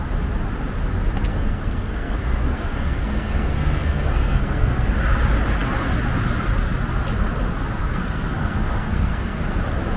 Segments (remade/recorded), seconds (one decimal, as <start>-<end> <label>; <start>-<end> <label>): 0.0-1.3 recorded; 1.3-5.0 remade; 5.0-7.8 recorded; 7.8-9.6 remade; 9.6-10.0 recorded